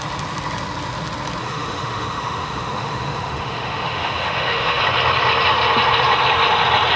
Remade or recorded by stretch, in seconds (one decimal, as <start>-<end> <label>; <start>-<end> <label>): 0.0-1.4 recorded; 1.4-4.8 remade; 4.8-7.0 recorded